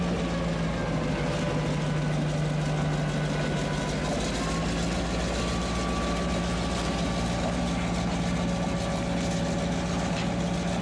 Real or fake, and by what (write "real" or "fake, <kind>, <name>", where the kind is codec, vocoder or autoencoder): real